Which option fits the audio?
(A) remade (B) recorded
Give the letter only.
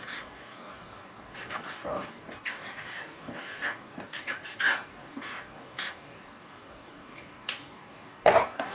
A